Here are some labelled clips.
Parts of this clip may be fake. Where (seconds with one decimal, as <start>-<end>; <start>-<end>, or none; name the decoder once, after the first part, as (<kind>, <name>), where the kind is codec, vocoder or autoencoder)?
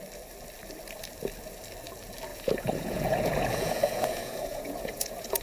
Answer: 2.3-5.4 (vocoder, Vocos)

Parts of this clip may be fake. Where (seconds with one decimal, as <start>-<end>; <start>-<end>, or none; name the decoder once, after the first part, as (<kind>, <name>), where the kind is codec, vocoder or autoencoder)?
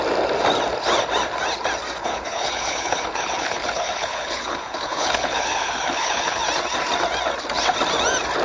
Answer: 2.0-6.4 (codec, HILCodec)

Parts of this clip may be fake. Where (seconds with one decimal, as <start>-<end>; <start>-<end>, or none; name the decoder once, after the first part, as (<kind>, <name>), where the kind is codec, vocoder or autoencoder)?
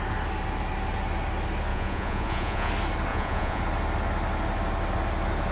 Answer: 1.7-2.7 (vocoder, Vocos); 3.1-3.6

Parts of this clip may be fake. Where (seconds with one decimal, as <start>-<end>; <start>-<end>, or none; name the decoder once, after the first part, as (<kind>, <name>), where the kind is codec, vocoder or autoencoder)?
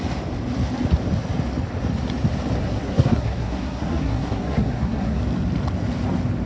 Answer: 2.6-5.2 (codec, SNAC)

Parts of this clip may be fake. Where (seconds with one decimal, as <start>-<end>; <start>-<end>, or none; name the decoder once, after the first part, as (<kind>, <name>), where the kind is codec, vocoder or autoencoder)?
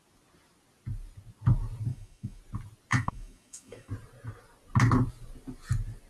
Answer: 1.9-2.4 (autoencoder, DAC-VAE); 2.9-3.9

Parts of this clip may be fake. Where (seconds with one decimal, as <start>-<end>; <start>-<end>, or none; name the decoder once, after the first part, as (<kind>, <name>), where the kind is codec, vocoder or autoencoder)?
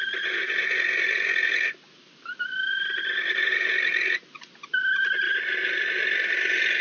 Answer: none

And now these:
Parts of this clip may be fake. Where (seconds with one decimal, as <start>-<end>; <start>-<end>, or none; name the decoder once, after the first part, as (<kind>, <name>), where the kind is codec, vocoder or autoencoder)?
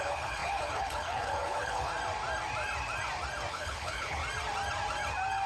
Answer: 0.0-1.9 (codec, HILCodec); 3.5-4.2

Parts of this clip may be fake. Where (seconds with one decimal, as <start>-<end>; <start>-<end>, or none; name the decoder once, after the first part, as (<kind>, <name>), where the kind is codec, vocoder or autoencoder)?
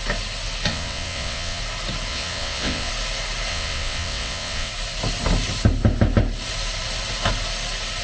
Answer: 0.7-1.6 (vocoder, WaveNeXt); 2.1-2.9; 3.5-4.7